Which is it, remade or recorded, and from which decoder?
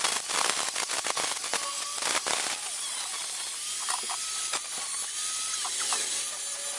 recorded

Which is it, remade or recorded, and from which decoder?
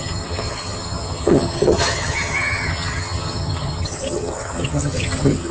remade, vocoder, HiFi-GAN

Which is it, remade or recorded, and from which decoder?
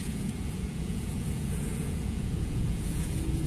remade, vocoder, Vocos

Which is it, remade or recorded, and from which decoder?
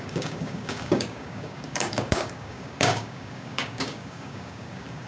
remade, codec, DAC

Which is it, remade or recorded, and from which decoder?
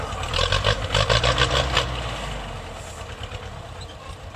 recorded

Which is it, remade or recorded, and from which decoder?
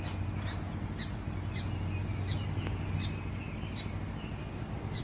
recorded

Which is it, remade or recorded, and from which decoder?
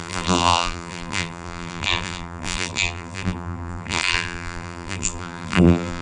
remade, vocoder, BigVGAN v2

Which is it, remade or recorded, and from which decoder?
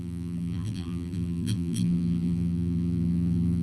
remade, vocoder, BigVGAN v2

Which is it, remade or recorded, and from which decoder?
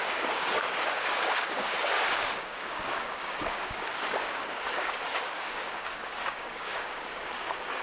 remade, codec, DAC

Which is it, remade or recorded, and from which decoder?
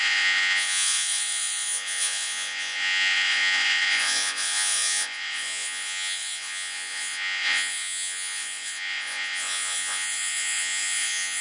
remade, vocoder, Vocos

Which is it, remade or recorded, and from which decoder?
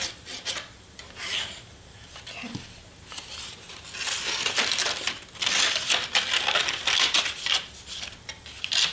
recorded